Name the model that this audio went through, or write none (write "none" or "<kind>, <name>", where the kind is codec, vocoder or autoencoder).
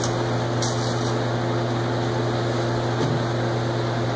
none